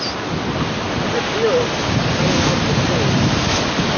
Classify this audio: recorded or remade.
recorded